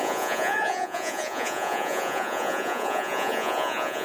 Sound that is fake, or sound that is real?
fake